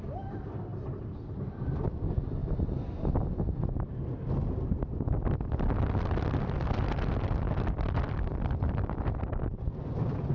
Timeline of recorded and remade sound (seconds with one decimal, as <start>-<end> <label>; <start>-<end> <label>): 0.0-0.7 remade; 0.7-1.5 recorded; 1.5-2.4 remade; 2.4-6.7 recorded; 6.7-8.3 remade; 8.3-9.6 recorded; 9.6-10.3 remade